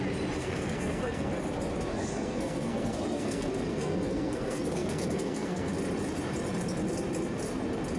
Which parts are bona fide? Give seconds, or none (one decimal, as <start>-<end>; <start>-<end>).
0.0-0.4; 1.3-1.9; 5.7-8.0